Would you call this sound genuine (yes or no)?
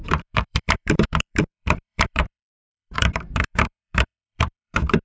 no